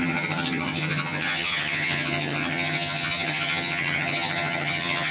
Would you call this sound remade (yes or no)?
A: yes